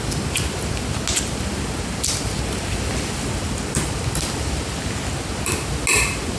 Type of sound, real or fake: real